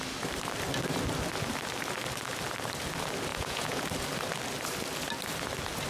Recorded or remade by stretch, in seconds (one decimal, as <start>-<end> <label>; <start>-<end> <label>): 0.0-3.3 recorded; 3.3-3.8 remade; 3.8-5.9 recorded